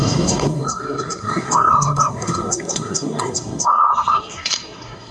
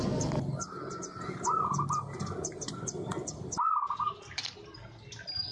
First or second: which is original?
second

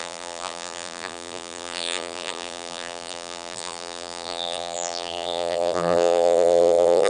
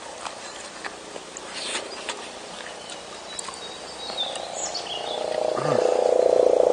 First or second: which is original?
second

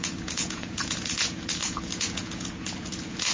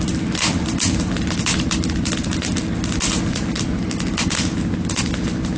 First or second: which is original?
second